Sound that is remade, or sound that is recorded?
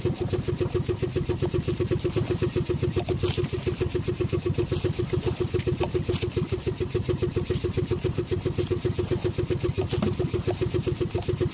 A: recorded